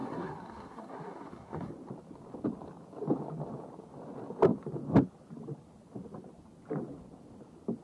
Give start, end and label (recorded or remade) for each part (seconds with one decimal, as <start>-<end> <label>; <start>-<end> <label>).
0.0-1.7 remade; 1.7-7.8 recorded